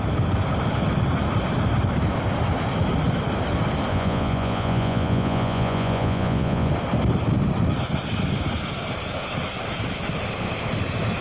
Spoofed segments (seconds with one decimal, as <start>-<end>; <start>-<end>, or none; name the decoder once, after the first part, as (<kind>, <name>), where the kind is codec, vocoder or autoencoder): 3.9-6.7 (vocoder, Vocos)